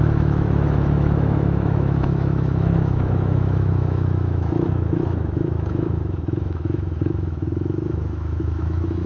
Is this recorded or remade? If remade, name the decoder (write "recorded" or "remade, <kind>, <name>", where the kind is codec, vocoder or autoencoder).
remade, autoencoder, DAC-VAE